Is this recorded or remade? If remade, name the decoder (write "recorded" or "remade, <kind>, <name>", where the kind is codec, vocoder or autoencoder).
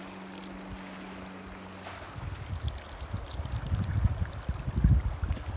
recorded